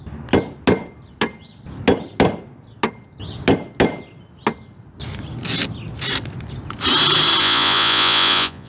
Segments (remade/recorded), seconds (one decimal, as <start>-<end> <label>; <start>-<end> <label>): 0.0-7.4 recorded; 7.4-8.7 remade